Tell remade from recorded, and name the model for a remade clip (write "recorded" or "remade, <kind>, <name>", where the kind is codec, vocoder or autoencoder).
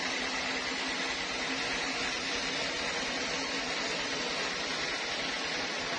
recorded